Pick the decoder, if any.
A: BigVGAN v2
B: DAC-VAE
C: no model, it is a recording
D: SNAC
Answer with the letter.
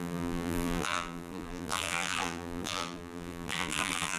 A